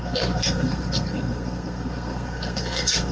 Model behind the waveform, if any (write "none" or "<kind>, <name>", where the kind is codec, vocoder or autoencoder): codec, SNAC